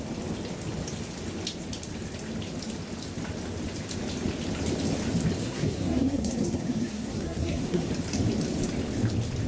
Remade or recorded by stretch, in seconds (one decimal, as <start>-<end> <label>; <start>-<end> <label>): 0.0-5.4 recorded; 5.4-7.9 remade; 7.9-9.5 recorded